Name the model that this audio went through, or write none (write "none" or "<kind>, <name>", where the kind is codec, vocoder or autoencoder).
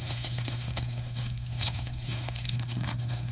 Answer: codec, SNAC